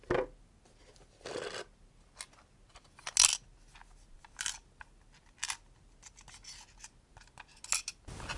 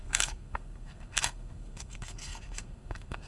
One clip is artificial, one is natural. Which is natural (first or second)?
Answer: first